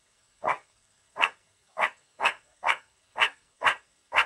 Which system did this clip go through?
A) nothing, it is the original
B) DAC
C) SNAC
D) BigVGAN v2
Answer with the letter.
C